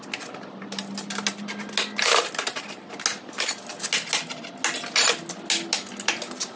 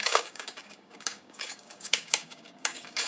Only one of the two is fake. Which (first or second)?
second